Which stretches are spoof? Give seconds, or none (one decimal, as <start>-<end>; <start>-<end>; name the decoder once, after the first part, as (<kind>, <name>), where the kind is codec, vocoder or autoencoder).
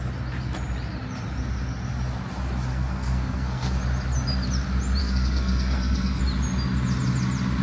2.7-3.8 (codec, SNAC); 5.0-6.2